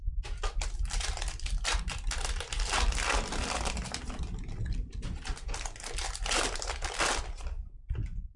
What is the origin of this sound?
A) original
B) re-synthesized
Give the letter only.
A